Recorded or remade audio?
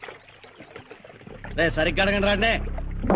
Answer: recorded